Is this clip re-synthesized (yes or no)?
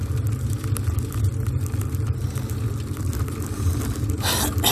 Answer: no